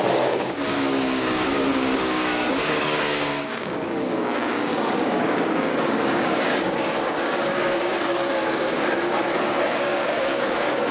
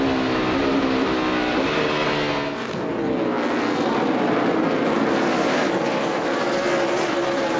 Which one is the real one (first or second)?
second